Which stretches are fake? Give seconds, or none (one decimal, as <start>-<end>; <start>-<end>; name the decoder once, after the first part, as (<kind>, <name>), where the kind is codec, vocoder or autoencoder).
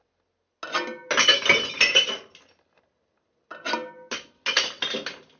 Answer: none